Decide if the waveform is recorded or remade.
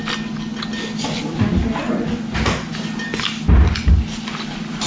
recorded